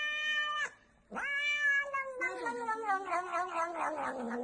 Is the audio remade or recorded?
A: recorded